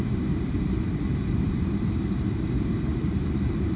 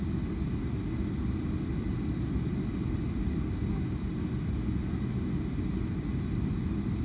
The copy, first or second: first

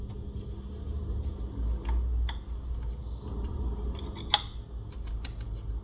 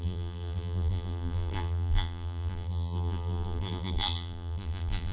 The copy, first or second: second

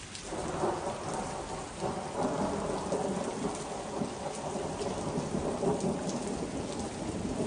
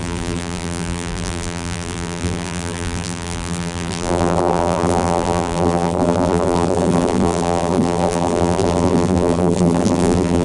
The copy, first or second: second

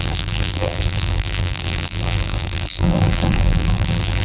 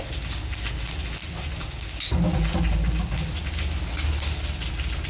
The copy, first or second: first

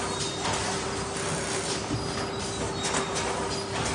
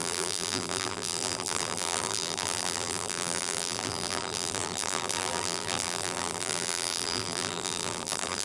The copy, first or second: second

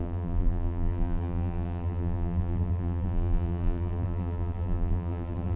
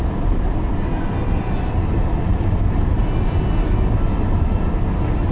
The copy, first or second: first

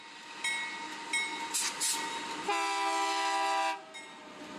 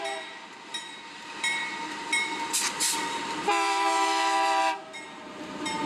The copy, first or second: second